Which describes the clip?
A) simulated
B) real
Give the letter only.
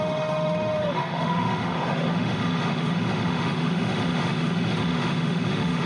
A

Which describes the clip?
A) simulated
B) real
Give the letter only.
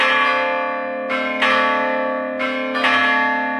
B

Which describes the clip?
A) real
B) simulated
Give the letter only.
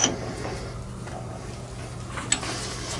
A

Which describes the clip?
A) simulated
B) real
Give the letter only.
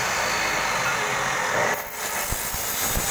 B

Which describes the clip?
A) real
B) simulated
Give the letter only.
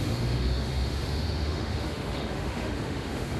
B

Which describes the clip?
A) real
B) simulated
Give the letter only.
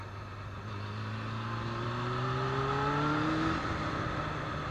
A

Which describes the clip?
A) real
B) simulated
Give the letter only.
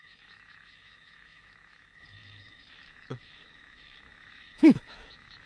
B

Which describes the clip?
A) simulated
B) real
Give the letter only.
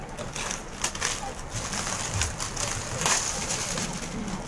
B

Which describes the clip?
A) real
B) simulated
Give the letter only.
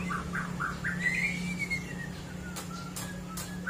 A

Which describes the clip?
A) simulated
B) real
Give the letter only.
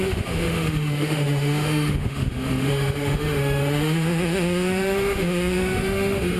A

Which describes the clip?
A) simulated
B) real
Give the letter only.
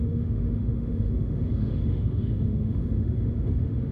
A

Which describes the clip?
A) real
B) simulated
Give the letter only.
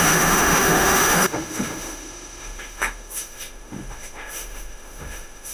B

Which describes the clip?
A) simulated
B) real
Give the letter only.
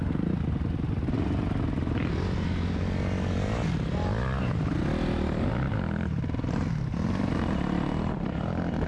B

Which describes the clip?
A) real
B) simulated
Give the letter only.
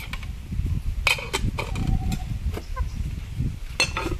A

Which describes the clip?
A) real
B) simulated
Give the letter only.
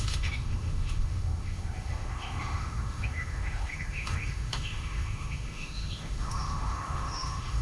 B